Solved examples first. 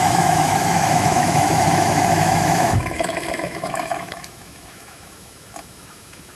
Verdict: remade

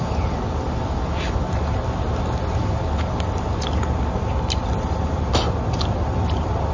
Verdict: recorded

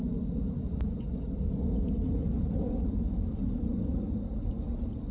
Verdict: recorded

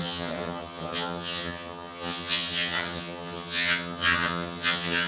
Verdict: remade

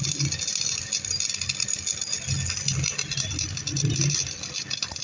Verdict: recorded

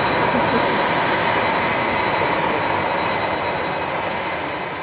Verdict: recorded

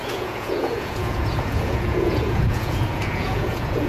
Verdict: remade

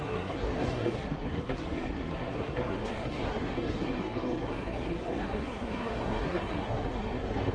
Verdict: remade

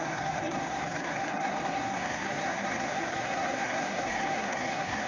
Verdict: remade